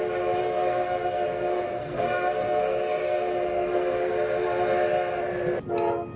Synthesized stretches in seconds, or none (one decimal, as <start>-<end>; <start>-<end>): 0.4-4.1